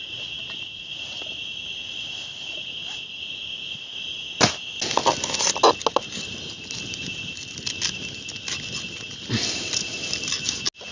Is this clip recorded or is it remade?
recorded